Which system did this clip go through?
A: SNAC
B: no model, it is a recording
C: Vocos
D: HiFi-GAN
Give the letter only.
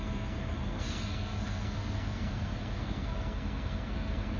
A